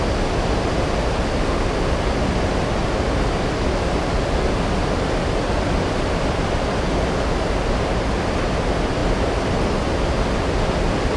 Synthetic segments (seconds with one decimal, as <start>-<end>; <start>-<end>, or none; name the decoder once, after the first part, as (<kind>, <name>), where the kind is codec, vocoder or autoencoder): none

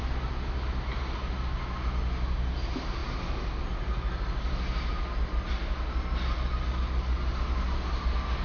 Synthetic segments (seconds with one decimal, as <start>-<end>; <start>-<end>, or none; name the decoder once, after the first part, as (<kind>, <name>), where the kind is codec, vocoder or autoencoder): none

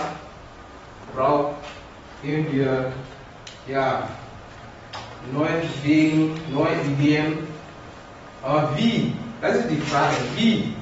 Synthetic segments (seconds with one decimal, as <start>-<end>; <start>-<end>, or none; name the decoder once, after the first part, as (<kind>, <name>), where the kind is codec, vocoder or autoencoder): 2.3-3.2 (vocoder, BigVGAN v2)